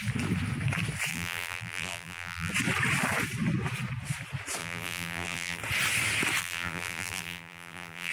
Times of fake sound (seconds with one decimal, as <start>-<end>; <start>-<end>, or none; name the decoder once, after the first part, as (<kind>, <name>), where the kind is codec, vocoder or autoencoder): 1.1-2.5 (vocoder, BigVGAN v2); 4.6-5.6; 6.4-8.1

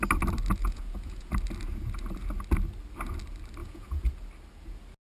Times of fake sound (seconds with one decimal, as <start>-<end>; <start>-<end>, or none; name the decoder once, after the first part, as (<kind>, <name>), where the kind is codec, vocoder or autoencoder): 0.6-1.3 (vocoder, Vocos); 3.6-4.1

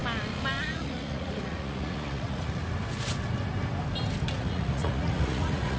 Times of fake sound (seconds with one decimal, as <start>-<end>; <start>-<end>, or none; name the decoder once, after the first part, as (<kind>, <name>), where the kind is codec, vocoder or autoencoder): 0.6-2.6 (vocoder, Vocos); 4.4-5.8

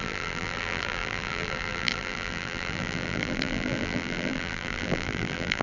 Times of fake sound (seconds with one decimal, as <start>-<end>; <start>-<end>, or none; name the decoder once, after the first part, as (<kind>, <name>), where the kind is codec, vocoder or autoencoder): 0.0-5.6 (vocoder, BigVGAN v2)

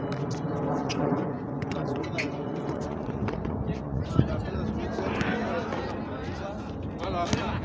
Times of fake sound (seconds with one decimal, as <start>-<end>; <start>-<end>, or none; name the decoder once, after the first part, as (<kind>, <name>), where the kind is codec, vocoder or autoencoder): 0.8-4.6 (vocoder, Vocos)

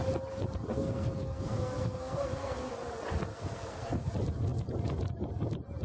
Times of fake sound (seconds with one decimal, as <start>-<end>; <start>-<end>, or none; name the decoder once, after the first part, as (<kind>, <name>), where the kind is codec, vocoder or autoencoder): 0.7-2.7 (codec, SNAC); 3.3-4.1

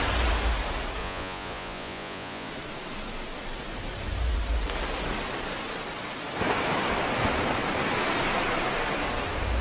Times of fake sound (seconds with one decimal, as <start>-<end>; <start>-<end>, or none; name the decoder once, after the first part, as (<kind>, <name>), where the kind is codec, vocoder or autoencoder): 1.0-2.5 (vocoder, Vocos)

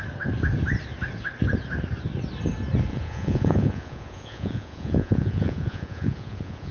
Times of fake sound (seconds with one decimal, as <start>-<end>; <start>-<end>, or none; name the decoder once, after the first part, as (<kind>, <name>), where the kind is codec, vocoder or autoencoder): 2.9-6.7 (vocoder, Vocos)